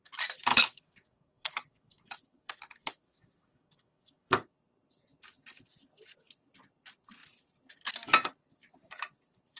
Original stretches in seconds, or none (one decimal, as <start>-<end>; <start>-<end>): 0.0-0.5; 4.5-9.6